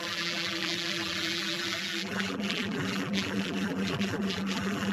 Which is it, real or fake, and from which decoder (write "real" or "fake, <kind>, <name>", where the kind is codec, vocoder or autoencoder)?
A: fake, vocoder, BigVGAN v2